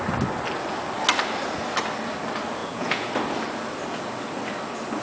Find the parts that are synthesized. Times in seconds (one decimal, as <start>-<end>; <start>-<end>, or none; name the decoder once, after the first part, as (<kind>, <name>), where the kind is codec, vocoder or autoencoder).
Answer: 2.6-3.1 (vocoder, Vocos)